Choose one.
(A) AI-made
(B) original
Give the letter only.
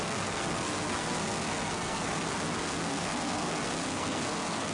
A